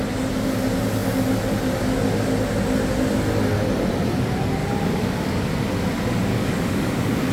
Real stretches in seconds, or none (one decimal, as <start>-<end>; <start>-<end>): 0.0-4.6; 5.4-6.3